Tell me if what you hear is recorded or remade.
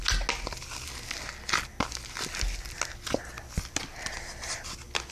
recorded